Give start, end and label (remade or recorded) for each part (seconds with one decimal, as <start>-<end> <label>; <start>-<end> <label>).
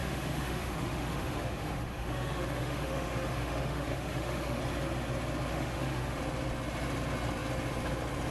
0.0-4.6 remade; 4.6-5.5 recorded; 5.5-6.2 remade; 6.2-8.3 recorded